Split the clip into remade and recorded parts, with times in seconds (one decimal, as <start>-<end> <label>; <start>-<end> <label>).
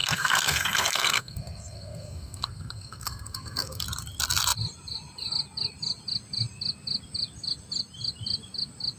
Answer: 0.0-3.8 remade; 3.8-9.0 recorded